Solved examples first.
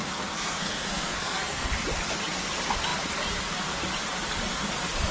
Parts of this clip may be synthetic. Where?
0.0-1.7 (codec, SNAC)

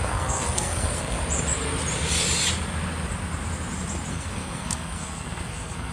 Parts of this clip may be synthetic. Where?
0.0-1.2 (codec, SNAC); 4.1-5.9

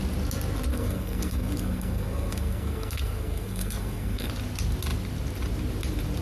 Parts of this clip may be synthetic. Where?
0.7-4.3 (codec, SNAC)

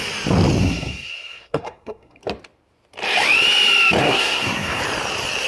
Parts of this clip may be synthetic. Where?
0.6-2.2 (codec, SNAC); 4.0-4.8

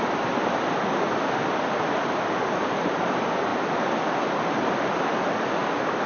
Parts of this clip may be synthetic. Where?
none

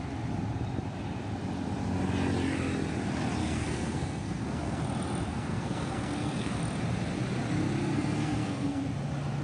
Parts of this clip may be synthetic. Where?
3.4-4.8 (codec, SNAC); 5.3-6.6; 7.8-8.8

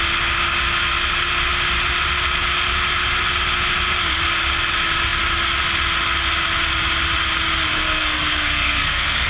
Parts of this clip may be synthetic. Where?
7.7-9.3 (codec, SNAC)

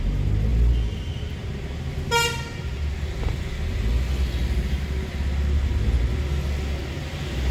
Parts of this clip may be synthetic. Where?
none